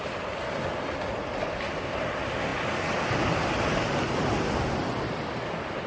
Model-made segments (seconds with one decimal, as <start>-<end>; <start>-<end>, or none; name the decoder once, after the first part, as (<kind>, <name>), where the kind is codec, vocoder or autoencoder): none